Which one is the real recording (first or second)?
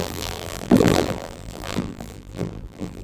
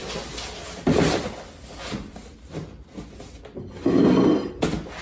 second